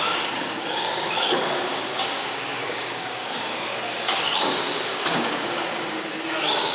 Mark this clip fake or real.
fake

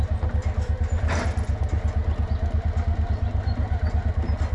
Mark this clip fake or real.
real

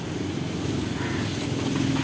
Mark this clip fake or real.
real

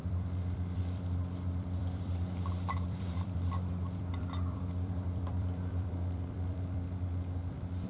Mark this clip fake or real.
fake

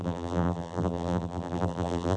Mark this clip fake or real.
fake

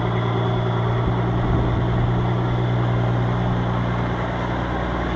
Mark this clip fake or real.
real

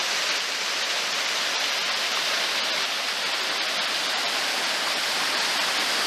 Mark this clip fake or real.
real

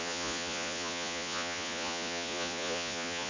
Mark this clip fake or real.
fake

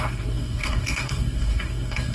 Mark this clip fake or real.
fake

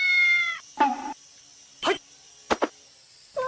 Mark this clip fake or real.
fake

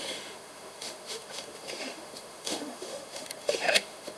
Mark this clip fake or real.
fake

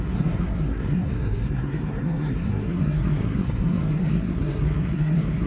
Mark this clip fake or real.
fake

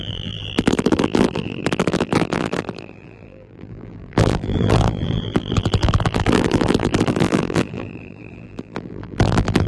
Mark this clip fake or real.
fake